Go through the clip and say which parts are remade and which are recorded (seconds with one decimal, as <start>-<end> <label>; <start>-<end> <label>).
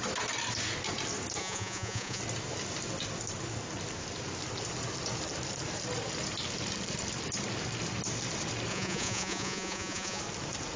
0.0-1.4 recorded; 1.4-2.2 remade; 2.2-8.7 recorded; 8.7-10.2 remade; 10.2-10.8 recorded